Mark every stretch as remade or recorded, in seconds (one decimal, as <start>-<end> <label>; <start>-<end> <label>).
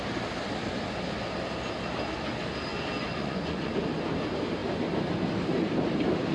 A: 0.0-2.7 recorded; 2.7-3.7 remade; 3.7-6.3 recorded